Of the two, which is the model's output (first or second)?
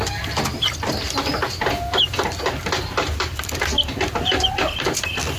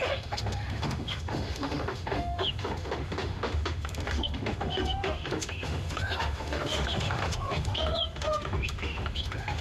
second